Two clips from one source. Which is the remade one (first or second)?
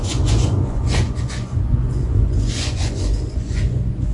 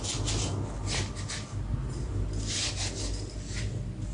first